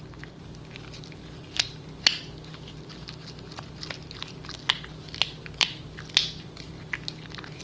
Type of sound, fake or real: real